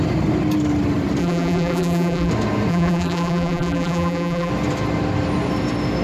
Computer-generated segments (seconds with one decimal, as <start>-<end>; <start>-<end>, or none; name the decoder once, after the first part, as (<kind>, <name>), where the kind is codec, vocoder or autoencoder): 1.2-2.3 (vocoder, BigVGAN v2); 2.7-4.5